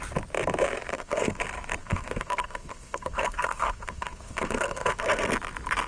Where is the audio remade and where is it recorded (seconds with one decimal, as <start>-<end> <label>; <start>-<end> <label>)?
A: 0.0-0.9 recorded; 0.9-1.4 remade; 1.4-1.8 recorded; 1.8-5.3 remade; 5.3-5.9 recorded